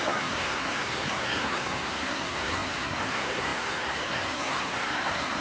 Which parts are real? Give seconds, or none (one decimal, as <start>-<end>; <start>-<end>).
none